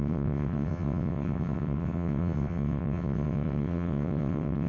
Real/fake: fake